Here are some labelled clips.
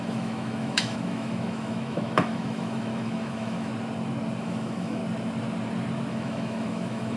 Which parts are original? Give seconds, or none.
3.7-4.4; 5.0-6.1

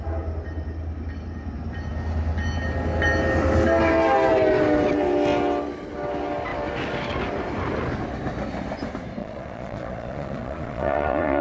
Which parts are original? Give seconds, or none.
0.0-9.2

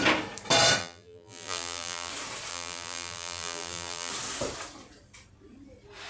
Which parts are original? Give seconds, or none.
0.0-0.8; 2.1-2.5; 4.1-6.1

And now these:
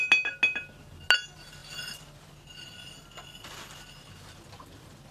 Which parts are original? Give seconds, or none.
0.0-5.1

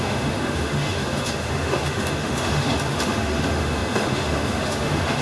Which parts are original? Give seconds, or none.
none

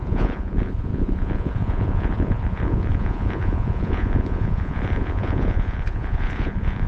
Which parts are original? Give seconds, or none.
none

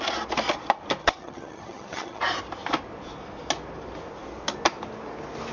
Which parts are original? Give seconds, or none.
0.0-1.0; 2.2-5.5